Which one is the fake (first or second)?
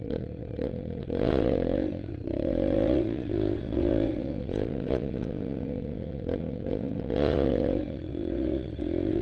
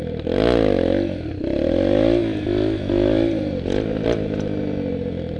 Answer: first